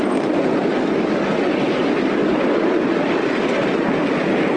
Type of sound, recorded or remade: recorded